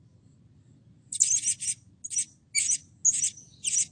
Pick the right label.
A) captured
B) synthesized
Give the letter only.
A